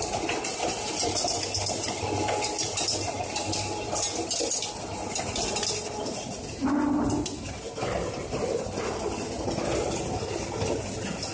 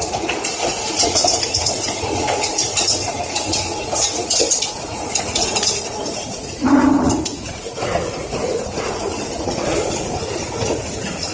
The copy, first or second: second